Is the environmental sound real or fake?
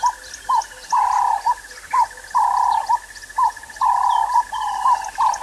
real